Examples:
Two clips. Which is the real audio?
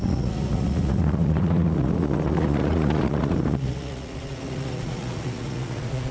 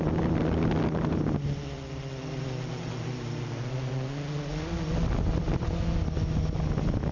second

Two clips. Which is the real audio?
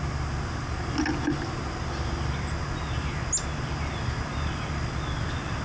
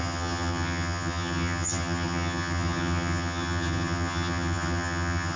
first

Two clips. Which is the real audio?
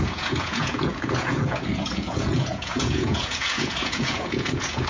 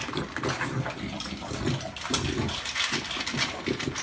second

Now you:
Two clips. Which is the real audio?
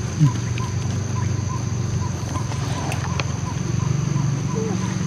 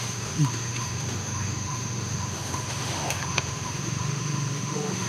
first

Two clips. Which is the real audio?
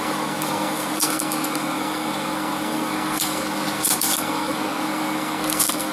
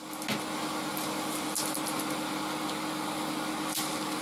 second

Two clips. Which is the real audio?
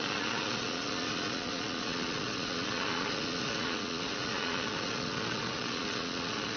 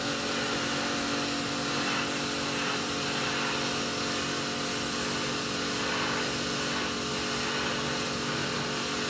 second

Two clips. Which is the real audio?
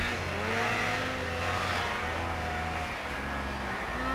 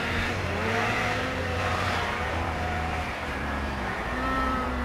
first